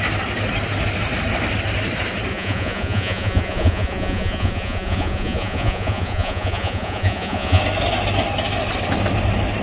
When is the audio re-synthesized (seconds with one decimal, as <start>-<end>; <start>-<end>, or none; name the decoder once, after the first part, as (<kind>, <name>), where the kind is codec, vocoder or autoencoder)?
2.3-7.6 (vocoder, Vocos)